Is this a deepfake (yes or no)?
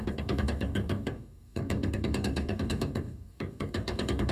yes